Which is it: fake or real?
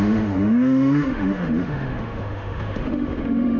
fake